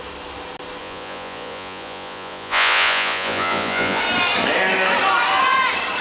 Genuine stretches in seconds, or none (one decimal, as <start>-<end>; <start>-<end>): 0.0-0.8; 4.0-6.0